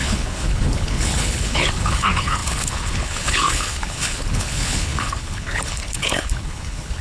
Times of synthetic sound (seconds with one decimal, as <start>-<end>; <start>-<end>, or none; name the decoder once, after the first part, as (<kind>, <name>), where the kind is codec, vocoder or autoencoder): 0.0-7.0 (codec, HILCodec)